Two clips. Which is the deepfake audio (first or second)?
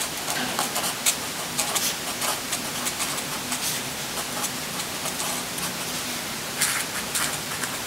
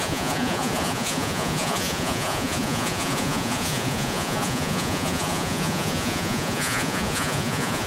second